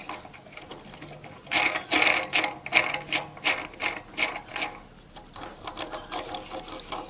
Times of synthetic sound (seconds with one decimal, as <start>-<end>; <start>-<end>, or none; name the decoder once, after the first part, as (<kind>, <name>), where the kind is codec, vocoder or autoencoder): none